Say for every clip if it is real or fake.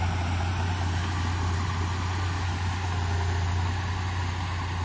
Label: real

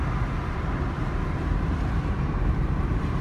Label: real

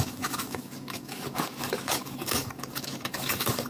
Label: fake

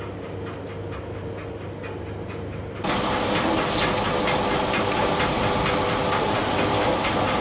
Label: real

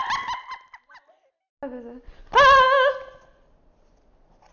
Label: real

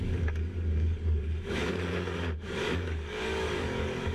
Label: fake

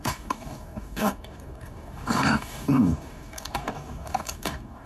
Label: fake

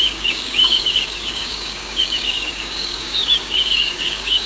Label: fake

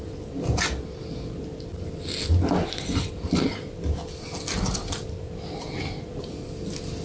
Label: real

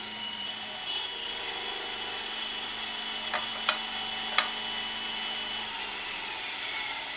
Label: real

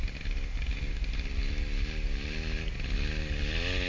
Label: real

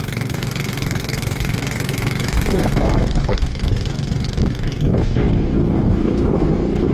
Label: fake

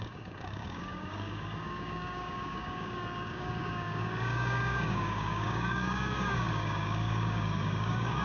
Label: fake